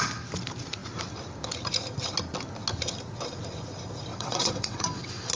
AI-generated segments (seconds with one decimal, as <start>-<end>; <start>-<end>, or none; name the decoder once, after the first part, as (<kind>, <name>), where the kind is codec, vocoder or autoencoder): 4.1-5.3 (vocoder, WaveNeXt)